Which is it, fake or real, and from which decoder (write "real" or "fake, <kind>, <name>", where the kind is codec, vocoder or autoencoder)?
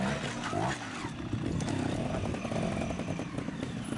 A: real